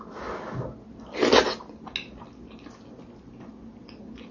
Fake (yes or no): no